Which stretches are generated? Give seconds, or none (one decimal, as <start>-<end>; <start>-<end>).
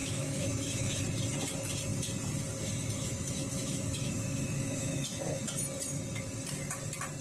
0.0-1.0; 3.0-5.4